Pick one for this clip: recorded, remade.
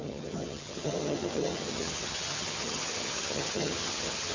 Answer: remade